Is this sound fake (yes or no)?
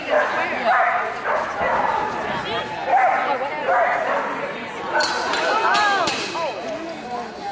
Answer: no